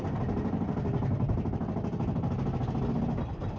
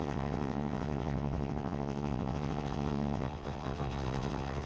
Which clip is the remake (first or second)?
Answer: second